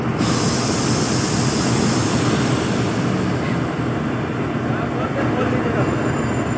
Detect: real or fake real